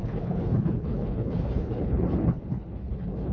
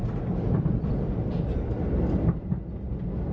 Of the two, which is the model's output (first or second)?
first